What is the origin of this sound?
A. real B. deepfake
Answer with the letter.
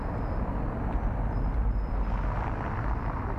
A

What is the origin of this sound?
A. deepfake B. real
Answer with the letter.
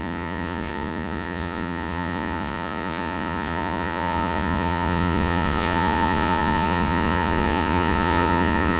A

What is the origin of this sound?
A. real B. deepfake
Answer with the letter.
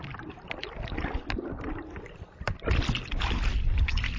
A